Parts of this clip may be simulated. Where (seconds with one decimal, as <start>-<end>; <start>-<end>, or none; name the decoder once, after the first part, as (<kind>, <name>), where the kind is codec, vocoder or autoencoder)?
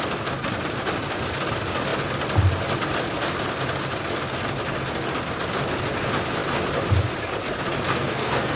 7.9-8.6 (codec, SNAC)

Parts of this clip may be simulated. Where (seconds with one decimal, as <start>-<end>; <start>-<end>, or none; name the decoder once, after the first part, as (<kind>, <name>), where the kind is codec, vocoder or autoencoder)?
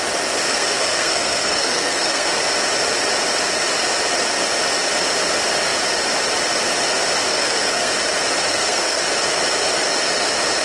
0.5-2.4 (codec, SNAC); 7.3-7.9; 8.5-9.0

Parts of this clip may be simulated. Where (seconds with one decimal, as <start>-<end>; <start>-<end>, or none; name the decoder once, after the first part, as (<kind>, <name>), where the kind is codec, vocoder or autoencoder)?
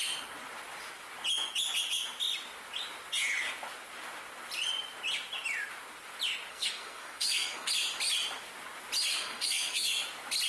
6.5-7.7 (codec, SNAC); 9.1-10.0